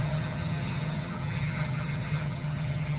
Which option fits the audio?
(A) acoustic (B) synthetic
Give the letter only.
B